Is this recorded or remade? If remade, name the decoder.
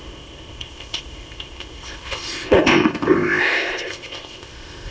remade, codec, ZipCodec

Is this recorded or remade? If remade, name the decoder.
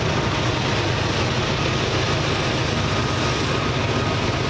recorded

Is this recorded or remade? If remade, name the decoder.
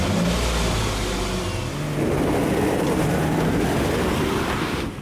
recorded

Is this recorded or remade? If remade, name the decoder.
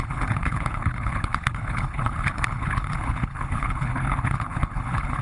remade, codec, HILCodec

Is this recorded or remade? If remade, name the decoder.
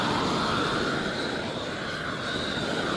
recorded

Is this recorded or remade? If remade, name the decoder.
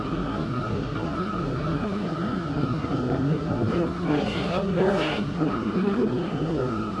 remade, codec, SNAC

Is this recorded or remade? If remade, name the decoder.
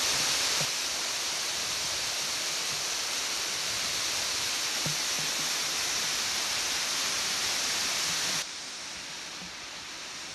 recorded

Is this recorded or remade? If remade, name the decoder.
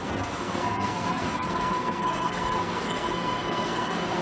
remade, codec, SNAC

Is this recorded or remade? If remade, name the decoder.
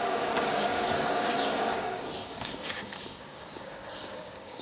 remade, codec, DAC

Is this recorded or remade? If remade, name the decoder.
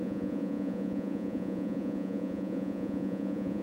remade, vocoder, Vocos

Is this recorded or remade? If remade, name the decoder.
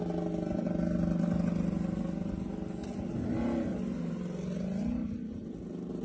recorded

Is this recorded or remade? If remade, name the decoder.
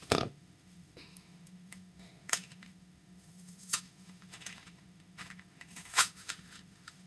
remade, autoencoder, DAC-VAE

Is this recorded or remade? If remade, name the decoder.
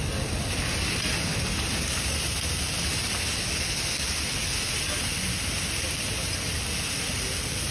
recorded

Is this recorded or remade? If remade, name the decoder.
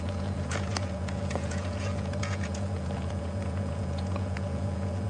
remade, vocoder, Vocos